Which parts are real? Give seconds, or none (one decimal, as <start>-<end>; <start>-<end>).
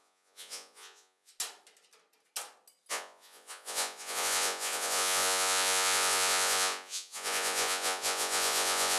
1.3-2.9